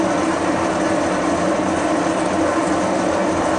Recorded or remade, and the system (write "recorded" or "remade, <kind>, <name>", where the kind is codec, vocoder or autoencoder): recorded